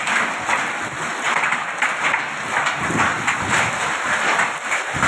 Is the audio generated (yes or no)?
no